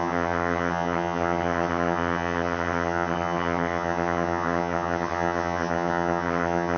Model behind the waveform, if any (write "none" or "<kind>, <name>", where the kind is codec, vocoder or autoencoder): vocoder, HiFi-GAN